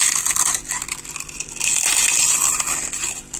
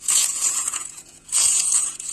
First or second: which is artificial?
second